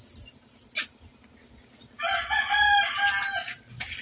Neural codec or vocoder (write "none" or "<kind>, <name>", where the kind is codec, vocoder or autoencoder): none